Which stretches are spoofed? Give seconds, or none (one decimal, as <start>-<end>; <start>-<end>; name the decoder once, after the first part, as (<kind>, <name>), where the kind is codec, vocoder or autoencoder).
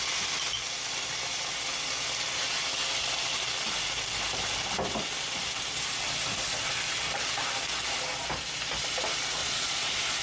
9.4-10.2 (vocoder, Vocos)